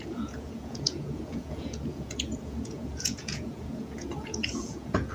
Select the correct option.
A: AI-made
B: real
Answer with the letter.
A